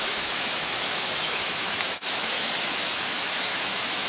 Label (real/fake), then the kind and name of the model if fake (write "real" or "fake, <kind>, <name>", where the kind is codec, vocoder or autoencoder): fake, autoencoder, DAC-VAE